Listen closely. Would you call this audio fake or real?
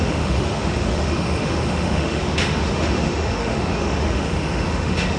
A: fake